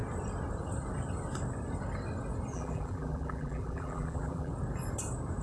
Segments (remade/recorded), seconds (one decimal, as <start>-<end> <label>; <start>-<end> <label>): 0.0-2.5 recorded; 2.5-4.5 remade; 4.5-5.4 recorded